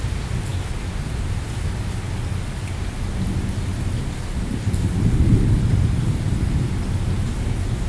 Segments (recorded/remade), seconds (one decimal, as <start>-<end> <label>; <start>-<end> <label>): 0.0-7.9 recorded